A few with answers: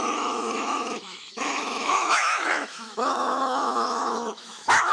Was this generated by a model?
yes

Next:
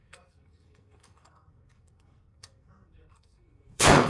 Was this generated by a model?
yes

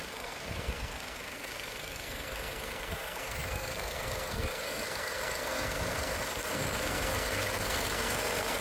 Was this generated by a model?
yes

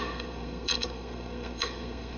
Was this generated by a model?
yes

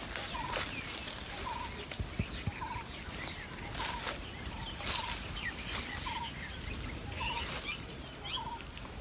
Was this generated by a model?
no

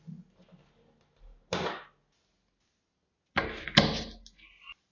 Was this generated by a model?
no